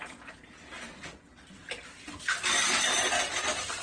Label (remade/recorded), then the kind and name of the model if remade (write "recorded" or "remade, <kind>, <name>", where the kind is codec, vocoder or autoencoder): recorded